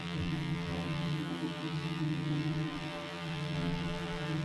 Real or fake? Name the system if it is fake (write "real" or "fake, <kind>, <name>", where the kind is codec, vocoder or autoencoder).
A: fake, vocoder, BigVGAN v2